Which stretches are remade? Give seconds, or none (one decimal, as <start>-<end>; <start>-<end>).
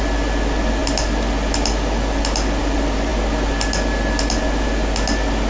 none